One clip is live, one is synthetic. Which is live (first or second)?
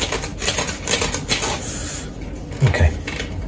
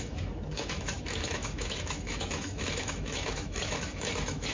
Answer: first